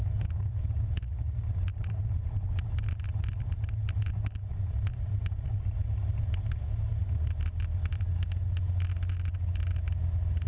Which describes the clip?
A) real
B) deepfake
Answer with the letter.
A